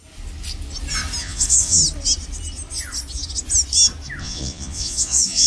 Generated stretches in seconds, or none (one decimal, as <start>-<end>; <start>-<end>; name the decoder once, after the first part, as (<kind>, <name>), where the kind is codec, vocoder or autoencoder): 1.2-1.8 (vocoder, Vocos); 4.2-5.5